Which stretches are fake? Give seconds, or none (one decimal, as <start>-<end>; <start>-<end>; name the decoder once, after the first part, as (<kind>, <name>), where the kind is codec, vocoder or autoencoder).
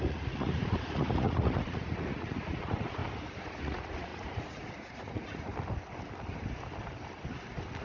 0.0-3.0 (vocoder, Vocos); 3.6-5.5